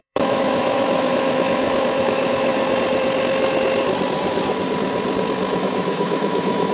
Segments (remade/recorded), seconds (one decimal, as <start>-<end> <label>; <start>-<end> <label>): 0.0-2.5 remade; 2.5-5.5 recorded; 5.5-6.7 remade